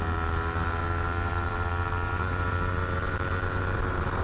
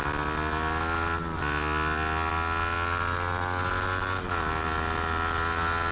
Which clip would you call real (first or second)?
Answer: second